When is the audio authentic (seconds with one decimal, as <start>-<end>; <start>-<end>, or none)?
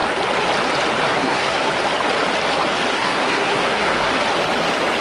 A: 0.0-1.1; 1.7-2.9; 4.1-5.0